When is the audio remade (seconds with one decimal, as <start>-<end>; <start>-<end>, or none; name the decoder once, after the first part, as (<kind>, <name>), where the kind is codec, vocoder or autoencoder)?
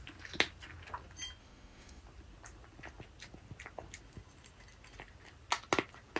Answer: 1.4-2.0 (autoencoder, DAC-VAE)